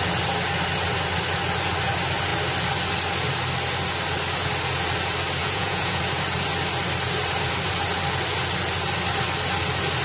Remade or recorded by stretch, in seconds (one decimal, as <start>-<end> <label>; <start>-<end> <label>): 0.0-5.4 recorded; 5.4-6.0 remade; 6.0-10.0 recorded